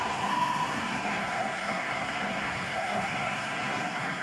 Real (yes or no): no